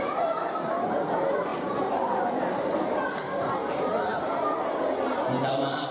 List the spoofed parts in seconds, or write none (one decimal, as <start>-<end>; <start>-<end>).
1.5-2.5